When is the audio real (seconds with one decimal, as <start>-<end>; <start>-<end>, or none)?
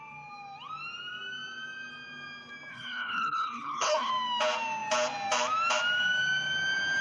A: 0.0-2.7; 4.1-7.0